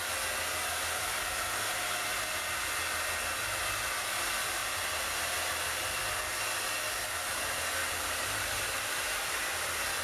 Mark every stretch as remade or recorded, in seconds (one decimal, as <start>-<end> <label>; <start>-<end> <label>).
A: 0.0-4.6 recorded; 4.6-6.0 remade; 6.0-7.8 recorded; 7.8-9.4 remade; 9.4-10.0 recorded